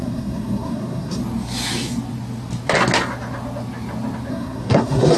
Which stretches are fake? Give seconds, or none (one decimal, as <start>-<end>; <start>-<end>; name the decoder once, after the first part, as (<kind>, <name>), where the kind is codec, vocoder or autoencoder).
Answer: 0.0-1.2 (codec, SNAC); 4.3-5.2